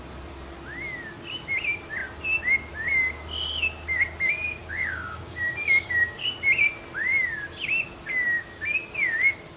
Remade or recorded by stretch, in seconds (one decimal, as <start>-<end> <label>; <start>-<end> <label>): 0.0-4.6 recorded; 4.6-6.3 remade; 6.3-9.6 recorded